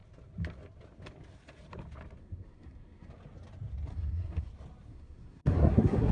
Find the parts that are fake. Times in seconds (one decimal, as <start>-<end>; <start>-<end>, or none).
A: 2.2-3.1; 3.9-4.5; 4.9-6.1